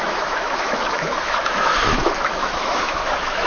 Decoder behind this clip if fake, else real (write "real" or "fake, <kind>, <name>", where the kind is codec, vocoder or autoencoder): fake, autoencoder, DAC-VAE